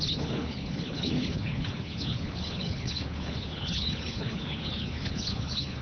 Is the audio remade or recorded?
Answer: remade